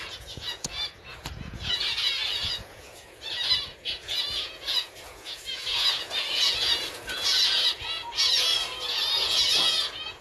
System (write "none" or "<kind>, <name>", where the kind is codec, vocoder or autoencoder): vocoder, Vocos